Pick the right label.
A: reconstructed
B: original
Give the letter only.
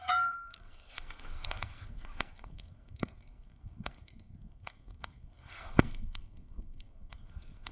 A